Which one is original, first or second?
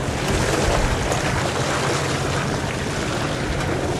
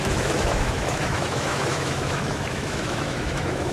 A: first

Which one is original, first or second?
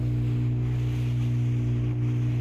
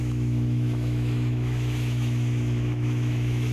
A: first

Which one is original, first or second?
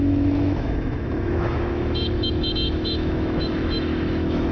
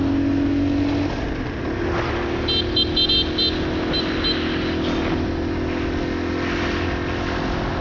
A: second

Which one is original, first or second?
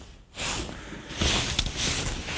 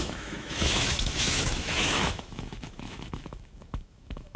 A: first